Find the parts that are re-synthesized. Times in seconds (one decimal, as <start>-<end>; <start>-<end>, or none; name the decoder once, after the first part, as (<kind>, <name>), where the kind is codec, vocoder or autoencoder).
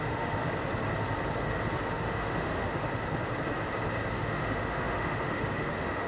0.0-0.4 (autoencoder, DAC-VAE); 1.8-2.8; 4.1-6.1